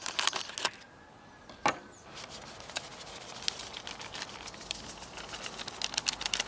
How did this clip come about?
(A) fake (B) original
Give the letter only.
B